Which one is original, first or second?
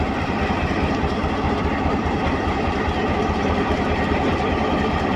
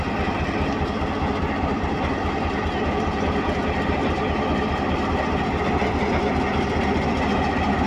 second